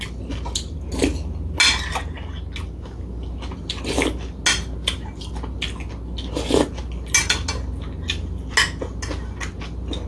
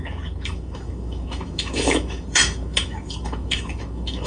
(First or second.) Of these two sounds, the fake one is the second